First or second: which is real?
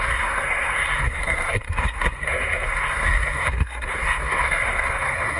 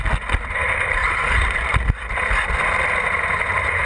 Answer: second